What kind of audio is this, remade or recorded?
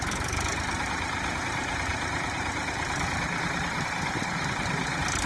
remade